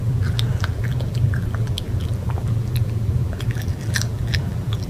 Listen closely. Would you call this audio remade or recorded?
remade